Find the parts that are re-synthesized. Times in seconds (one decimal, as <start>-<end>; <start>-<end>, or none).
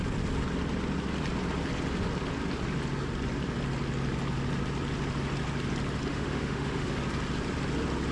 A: 6.1-6.9